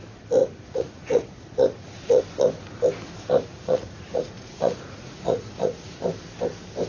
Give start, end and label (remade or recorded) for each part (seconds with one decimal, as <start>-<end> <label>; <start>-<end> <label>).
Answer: 0.0-0.4 recorded; 0.4-2.2 remade; 2.2-3.5 recorded; 3.5-6.0 remade; 6.0-6.9 recorded